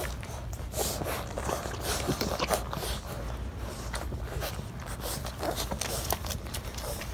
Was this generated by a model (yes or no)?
no